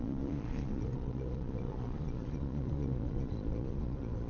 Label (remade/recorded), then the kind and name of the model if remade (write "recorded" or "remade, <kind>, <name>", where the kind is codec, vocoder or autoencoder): remade, vocoder, Vocos